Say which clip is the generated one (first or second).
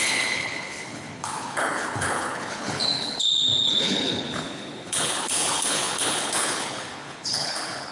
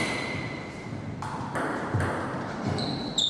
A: first